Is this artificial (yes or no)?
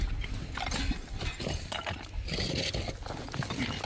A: no